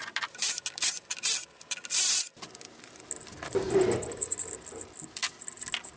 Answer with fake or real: real